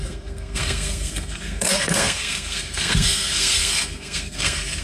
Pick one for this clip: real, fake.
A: fake